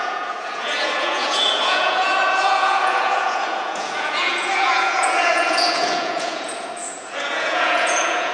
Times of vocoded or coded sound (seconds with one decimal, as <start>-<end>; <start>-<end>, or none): 0.0-8.3